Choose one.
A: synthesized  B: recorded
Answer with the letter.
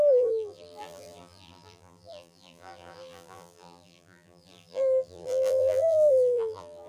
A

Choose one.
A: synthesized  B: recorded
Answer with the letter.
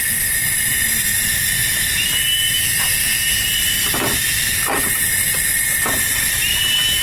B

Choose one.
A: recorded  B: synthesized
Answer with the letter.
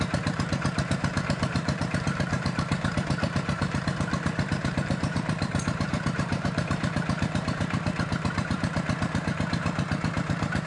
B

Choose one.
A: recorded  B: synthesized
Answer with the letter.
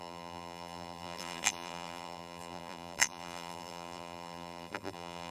B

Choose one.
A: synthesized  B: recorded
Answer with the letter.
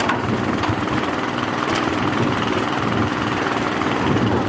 B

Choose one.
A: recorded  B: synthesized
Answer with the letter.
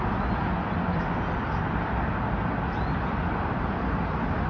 A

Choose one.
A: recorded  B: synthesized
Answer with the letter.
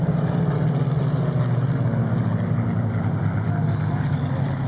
A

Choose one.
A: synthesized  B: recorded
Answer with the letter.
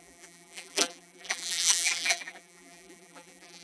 A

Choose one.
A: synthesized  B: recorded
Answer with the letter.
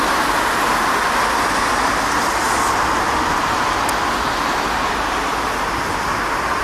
B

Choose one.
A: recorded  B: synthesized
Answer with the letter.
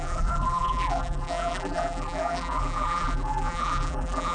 B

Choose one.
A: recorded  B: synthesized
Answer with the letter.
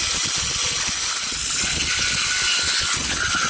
A